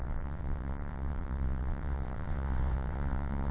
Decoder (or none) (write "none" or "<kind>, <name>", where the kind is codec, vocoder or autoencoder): vocoder, WaveNeXt